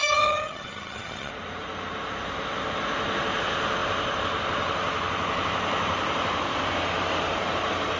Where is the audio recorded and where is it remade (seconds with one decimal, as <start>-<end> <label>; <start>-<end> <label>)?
0.0-1.3 remade; 1.3-8.0 recorded